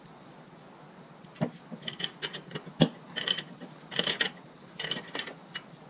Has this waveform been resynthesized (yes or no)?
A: no